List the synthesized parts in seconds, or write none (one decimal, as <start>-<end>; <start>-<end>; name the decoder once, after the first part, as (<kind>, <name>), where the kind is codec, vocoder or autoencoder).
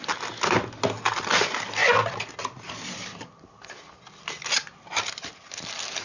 none